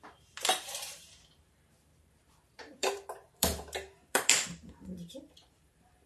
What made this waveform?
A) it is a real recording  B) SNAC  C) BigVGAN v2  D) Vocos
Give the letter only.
C